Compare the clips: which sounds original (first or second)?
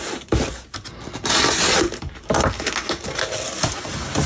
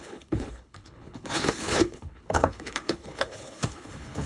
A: first